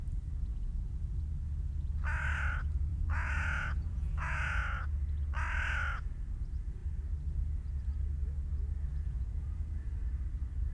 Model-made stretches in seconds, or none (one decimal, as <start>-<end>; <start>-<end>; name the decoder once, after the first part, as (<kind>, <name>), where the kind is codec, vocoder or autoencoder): 2.9-4.8 (vocoder, Vocos); 8.9-9.9